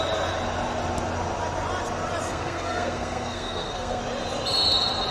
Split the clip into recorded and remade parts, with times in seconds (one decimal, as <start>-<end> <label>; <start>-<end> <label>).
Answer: 0.0-2.3 recorded; 2.3-4.0 remade; 4.0-5.1 recorded